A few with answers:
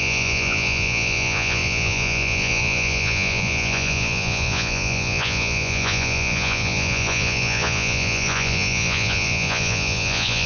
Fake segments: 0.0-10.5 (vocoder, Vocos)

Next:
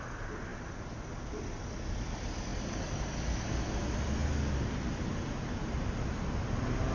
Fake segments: none

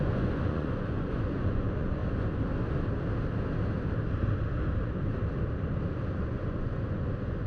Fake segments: 0.0-2.0 (vocoder, Vocos); 6.2-7.5

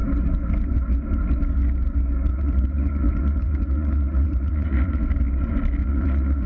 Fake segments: 2.3-5.0 (vocoder, Vocos); 5.8-6.5

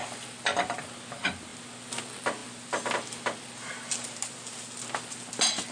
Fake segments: none

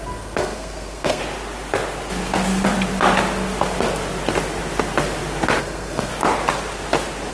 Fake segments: 0.0-1.2 (codec, SNAC); 5.6-6.1

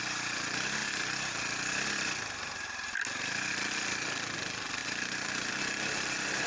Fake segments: 4.8-5.5 (vocoder, BigVGAN v2)